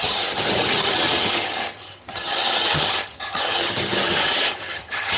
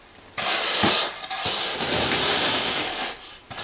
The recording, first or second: second